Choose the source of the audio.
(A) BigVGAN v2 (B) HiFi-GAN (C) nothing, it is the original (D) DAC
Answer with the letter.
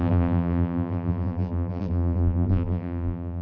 A